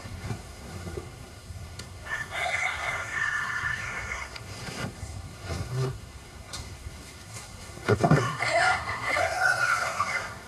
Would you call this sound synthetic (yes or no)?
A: yes